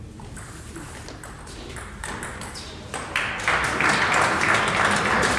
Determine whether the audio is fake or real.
real